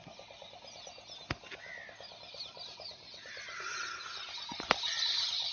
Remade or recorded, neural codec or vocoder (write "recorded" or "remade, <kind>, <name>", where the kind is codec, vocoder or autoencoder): recorded